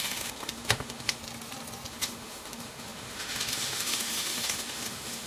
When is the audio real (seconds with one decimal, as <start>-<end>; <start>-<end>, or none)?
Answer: 1.2-1.9

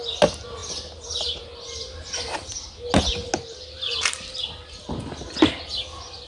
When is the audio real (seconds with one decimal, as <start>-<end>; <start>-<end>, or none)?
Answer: 0.0-6.3

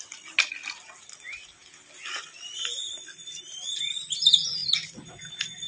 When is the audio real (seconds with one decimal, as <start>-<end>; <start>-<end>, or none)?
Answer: 0.0-5.7

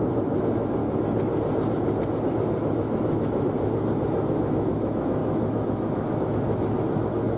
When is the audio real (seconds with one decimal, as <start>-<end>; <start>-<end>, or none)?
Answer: 0.8-2.3

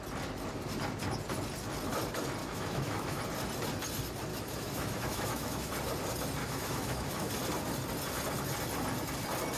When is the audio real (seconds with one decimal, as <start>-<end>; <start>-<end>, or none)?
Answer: 0.0-2.4; 3.2-4.3; 5.7-6.4; 7.3-9.6

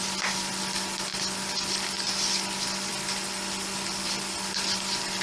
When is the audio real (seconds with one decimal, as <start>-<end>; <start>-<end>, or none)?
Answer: 0.0-5.2

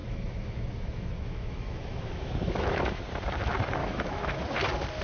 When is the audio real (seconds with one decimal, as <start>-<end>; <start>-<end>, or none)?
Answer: 3.0-3.8; 4.4-5.0